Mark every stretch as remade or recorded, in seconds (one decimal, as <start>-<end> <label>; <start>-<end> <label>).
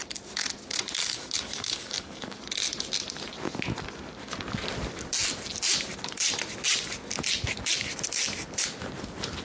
0.0-1.0 recorded; 1.0-2.4 remade; 2.4-9.4 recorded